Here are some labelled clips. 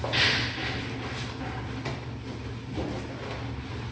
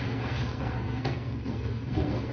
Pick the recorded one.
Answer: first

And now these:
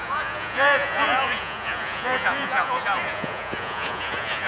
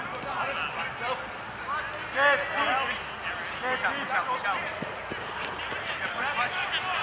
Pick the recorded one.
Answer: second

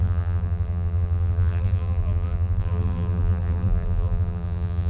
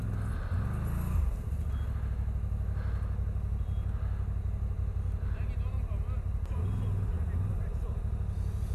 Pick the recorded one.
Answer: second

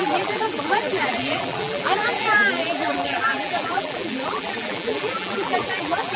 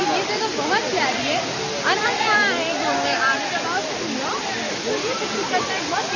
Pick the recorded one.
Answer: second